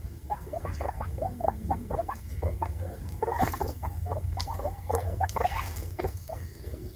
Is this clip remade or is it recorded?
remade